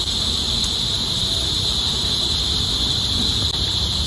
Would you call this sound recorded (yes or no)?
no